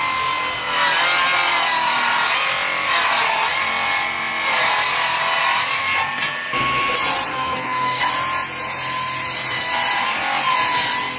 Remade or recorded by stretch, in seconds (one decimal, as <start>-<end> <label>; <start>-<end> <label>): 0.0-7.3 recorded; 7.3-8.0 remade; 8.0-11.2 recorded